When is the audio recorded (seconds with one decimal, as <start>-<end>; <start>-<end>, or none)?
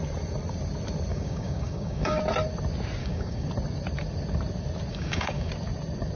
0.0-1.1; 2.2-3.0; 3.5-4.9; 5.5-6.2